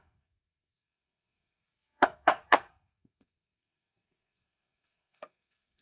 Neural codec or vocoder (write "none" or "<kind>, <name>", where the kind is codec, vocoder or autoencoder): codec, SNAC